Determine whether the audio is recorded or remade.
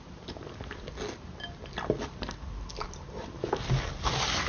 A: recorded